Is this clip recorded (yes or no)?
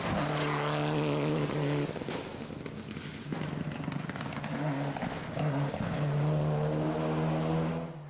yes